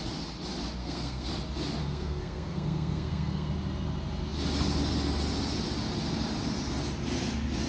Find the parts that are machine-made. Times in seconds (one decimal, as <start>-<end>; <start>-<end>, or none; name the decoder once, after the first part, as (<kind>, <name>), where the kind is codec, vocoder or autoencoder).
0.8-1.3 (codec, SNAC); 1.8-3.5

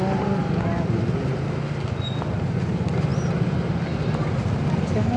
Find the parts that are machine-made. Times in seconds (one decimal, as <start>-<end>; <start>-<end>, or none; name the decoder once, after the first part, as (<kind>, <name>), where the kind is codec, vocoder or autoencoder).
none

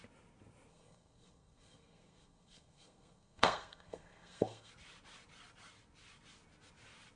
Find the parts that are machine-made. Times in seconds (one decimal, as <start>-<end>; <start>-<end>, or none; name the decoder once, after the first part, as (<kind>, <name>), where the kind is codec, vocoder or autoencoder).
0.7-4.7 (codec, SNAC)

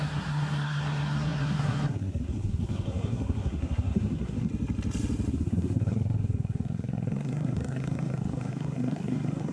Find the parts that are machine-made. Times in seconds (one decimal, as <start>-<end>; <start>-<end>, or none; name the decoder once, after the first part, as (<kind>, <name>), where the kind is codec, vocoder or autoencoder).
0.0-4.5 (codec, SNAC); 5.3-9.5

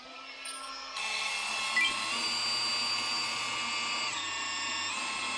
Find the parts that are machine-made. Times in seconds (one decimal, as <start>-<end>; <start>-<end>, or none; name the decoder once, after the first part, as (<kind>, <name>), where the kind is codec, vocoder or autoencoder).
0.6-1.3 (codec, SNAC)